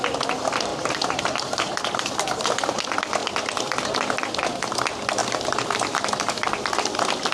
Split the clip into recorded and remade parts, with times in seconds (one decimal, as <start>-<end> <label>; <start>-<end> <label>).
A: 0.0-0.7 recorded; 0.7-2.4 remade; 2.4-5.2 recorded; 5.2-6.0 remade; 6.0-7.3 recorded